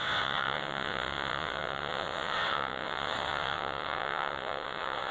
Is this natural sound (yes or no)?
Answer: no